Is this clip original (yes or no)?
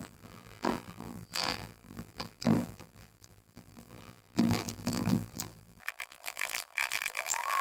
no